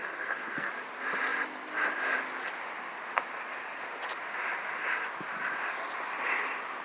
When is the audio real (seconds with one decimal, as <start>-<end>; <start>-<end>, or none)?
0.7-6.8